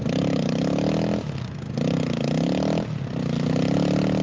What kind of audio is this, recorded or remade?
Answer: recorded